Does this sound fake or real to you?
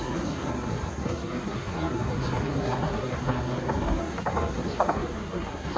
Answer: fake